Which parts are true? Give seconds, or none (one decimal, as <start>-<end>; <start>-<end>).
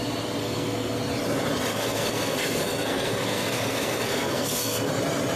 0.0-0.4; 1.0-1.7; 4.9-5.4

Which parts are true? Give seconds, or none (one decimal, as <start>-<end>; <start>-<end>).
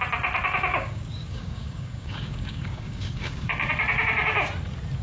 0.0-0.7; 3.7-5.0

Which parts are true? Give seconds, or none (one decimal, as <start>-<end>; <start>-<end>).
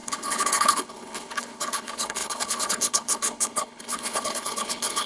none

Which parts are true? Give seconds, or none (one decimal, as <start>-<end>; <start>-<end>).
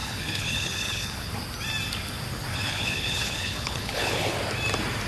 1.3-2.5; 4.3-5.1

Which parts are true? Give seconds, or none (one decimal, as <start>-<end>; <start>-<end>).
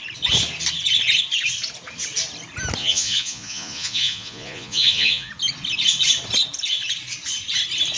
0.0-2.8; 5.3-8.0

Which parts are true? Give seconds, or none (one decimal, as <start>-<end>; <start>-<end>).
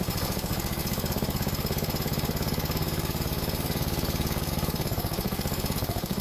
none